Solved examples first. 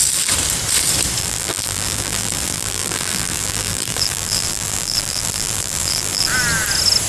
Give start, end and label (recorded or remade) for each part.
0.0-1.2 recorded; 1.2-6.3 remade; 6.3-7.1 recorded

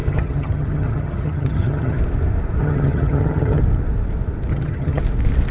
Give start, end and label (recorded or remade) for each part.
0.0-2.0 remade; 2.0-2.6 recorded; 2.6-3.6 remade; 3.6-4.5 recorded; 4.5-5.0 remade; 5.0-5.5 recorded

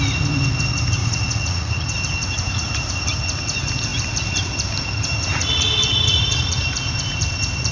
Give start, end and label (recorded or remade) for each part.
0.0-1.0 recorded; 1.0-1.9 remade; 1.9-7.7 recorded

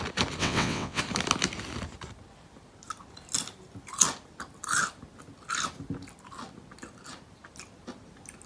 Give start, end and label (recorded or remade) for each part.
0.0-0.4 recorded; 0.4-1.0 remade; 1.0-8.5 recorded

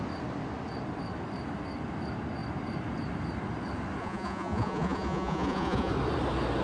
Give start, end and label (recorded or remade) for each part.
0.0-4.0 recorded; 4.0-5.9 remade; 5.9-6.6 recorded

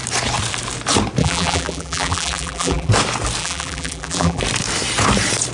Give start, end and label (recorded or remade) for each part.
0.0-1.2 recorded; 1.2-2.9 remade; 2.9-3.4 recorded; 3.4-4.4 remade; 4.4-5.5 recorded

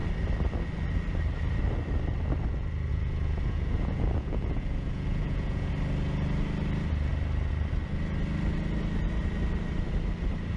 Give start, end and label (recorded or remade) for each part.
0.0-2.9 recorded; 2.9-5.7 remade; 5.7-10.6 recorded

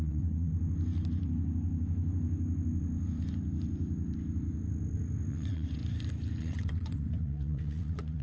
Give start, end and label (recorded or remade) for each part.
0.0-0.5 remade; 0.5-5.3 recorded; 5.3-5.8 remade; 5.8-6.4 recorded; 6.4-8.2 remade